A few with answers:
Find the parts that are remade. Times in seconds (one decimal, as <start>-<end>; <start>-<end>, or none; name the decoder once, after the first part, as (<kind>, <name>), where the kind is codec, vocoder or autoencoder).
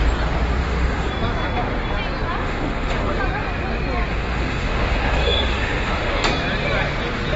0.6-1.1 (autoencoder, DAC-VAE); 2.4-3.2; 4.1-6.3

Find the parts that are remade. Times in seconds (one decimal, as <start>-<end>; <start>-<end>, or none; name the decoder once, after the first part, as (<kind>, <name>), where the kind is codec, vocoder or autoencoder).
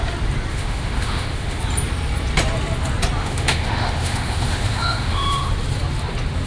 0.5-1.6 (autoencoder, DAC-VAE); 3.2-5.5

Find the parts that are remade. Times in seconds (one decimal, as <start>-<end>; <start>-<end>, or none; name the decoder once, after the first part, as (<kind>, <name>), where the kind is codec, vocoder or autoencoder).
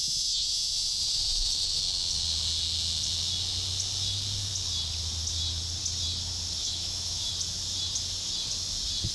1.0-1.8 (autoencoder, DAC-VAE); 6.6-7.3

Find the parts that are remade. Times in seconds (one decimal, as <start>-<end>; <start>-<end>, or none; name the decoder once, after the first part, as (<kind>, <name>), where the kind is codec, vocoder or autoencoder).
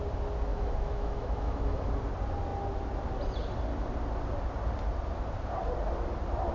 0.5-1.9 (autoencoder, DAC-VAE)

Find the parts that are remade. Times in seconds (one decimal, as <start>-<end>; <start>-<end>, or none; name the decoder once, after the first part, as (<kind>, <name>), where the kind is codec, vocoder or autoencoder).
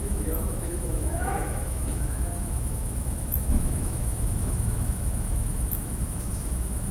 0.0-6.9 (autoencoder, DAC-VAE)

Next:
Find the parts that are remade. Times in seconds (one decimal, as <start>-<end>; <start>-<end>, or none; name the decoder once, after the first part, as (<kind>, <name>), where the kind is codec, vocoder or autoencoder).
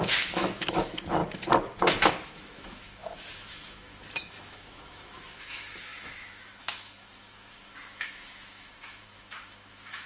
0.0-1.2 (autoencoder, DAC-VAE); 2.1-10.1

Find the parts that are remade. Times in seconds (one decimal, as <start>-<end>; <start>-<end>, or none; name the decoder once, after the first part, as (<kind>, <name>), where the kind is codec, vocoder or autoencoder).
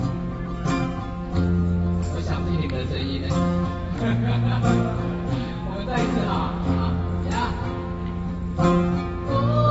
2.5-7.0 (autoencoder, DAC-VAE)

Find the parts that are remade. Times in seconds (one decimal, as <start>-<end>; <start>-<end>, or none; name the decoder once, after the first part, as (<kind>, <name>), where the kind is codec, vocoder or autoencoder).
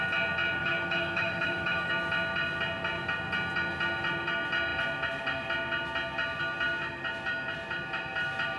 0.6-1.9 (autoencoder, DAC-VAE)